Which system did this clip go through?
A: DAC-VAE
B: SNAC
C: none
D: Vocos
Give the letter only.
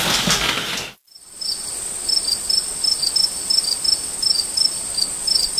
C